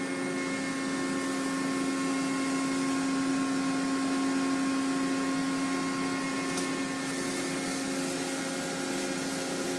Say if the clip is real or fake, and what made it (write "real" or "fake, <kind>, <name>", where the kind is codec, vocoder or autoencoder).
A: real